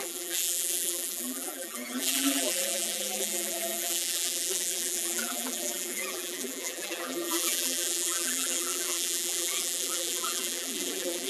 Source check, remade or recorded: remade